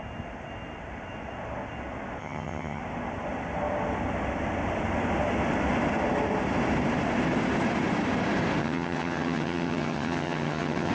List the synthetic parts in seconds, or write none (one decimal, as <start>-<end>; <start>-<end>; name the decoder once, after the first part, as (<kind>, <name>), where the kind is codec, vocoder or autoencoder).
2.2-2.8 (vocoder, HiFi-GAN); 8.6-10.9